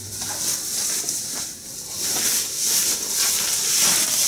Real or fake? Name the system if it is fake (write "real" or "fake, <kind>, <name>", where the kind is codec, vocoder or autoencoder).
real